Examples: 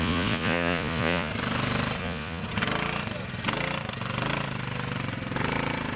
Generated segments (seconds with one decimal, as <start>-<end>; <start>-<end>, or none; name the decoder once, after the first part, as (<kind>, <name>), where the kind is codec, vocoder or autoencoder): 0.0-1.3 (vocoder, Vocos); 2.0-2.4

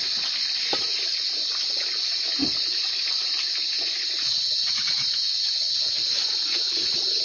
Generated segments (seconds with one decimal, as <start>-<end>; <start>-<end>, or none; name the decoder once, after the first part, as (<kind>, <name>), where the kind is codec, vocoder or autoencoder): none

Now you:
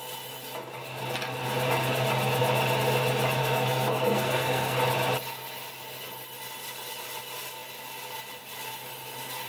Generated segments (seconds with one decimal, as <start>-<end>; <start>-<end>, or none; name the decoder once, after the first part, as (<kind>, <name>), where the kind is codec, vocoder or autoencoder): 3.4-4.8 (codec, SNAC)